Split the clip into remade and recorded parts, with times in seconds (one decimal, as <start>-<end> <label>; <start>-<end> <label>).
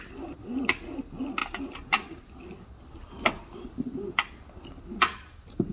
0.0-5.7 recorded